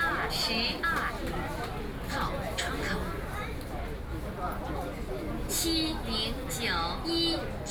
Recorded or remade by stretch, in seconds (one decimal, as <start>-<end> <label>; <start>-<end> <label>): 0.0-7.7 recorded